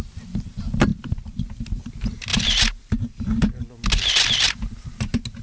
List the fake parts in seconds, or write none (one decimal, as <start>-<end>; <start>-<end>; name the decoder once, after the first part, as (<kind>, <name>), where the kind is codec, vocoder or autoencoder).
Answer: 0.9-1.9 (vocoder, BigVGAN v2); 2.3-3.4